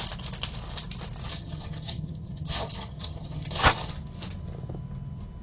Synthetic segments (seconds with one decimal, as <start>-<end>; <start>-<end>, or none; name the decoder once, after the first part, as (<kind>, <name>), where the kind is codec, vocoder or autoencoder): 1.3-3.9 (vocoder, HiFi-GAN)

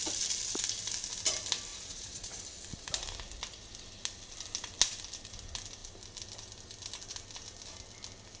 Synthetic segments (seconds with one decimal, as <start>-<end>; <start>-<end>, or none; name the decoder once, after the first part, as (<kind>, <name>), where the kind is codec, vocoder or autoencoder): 1.7-2.4 (vocoder, Vocos)

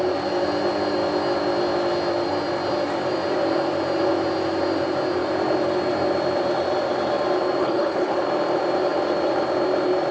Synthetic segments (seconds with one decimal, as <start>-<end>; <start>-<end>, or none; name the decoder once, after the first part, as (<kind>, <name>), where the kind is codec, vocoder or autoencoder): 7.6-8.2 (codec, HILCodec)

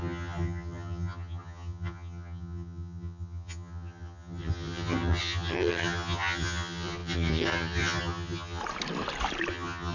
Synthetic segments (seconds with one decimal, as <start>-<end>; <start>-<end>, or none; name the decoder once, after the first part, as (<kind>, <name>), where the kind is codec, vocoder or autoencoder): 0.0-8.6 (vocoder, HiFi-GAN); 9.5-9.9

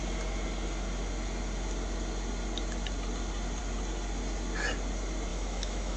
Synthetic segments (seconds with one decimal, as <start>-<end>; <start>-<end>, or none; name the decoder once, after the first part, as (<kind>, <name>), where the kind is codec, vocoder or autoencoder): 5.3-6.0 (autoencoder, DAC-VAE)

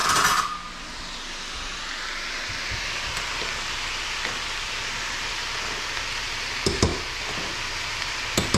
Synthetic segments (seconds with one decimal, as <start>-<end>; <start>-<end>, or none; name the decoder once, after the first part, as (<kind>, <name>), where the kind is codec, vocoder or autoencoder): 2.3-6.9 (vocoder, BigVGAN v2); 7.8-8.6

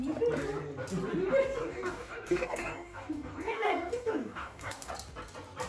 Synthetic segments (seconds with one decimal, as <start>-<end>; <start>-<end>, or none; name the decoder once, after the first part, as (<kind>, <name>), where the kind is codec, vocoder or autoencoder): 1.6-4.9 (codec, DAC)